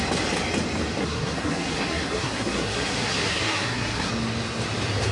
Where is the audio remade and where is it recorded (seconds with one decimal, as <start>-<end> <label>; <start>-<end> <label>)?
0.0-1.0 recorded; 1.0-4.1 remade; 4.1-5.1 recorded